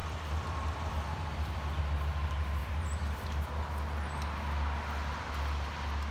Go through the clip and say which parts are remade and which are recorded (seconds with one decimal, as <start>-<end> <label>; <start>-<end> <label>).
0.0-1.8 remade; 1.8-2.6 recorded; 2.6-3.5 remade; 3.5-6.1 recorded